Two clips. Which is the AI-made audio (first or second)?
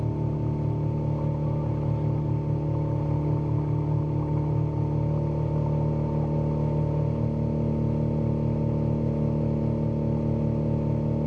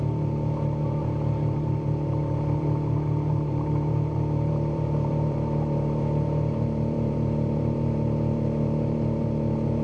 second